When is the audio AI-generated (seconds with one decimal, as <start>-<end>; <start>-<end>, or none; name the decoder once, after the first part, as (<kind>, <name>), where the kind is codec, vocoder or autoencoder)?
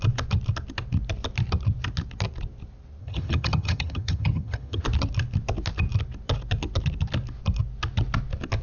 3.0-4.8 (vocoder, HiFi-GAN)